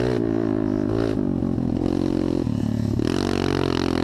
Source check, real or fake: real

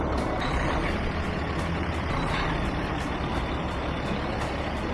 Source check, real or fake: fake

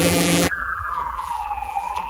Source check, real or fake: fake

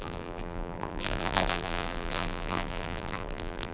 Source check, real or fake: fake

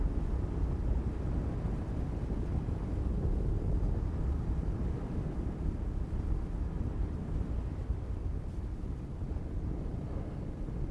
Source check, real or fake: real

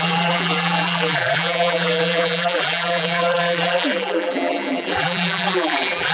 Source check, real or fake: fake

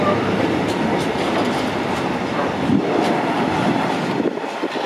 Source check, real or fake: real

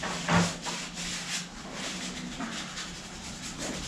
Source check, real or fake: real